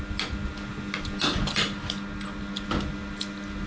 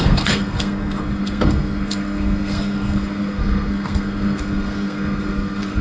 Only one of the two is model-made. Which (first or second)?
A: second